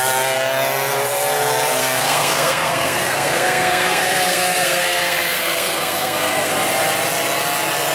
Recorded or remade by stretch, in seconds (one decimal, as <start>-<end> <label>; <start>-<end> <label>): 0.0-1.8 recorded; 1.8-6.5 remade; 6.5-7.9 recorded